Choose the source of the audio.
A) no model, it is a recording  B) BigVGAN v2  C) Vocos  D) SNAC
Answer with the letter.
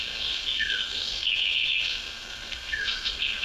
D